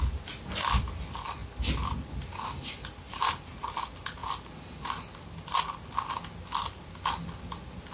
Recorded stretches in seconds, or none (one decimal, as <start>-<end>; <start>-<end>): 0.0-7.9